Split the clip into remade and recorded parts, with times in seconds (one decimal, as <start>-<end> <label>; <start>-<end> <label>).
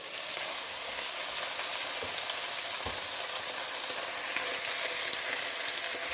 0.0-0.5 recorded; 0.5-1.1 remade; 1.1-6.1 recorded